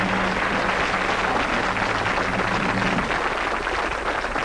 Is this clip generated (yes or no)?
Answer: no